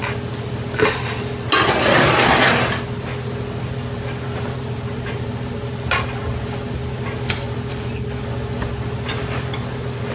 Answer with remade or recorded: recorded